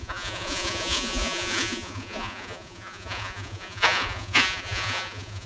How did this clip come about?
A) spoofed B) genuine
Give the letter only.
A